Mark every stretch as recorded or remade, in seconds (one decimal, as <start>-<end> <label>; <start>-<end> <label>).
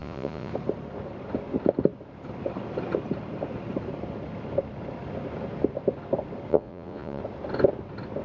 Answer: 0.0-0.5 remade; 0.5-6.5 recorded; 6.5-7.2 remade; 7.2-8.2 recorded